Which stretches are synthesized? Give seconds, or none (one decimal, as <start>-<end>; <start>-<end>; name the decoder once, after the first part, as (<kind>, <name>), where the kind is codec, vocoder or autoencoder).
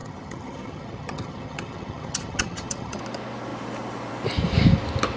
0.0-3.0 (vocoder, HiFi-GAN)